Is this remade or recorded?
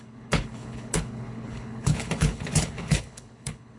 remade